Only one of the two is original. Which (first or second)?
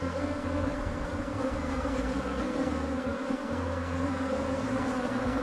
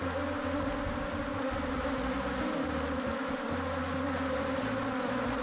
second